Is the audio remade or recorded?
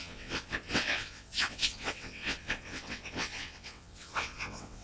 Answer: remade